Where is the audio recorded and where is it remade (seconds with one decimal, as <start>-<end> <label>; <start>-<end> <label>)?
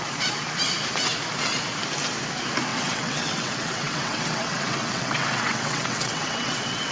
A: 0.0-2.7 recorded; 2.7-6.9 remade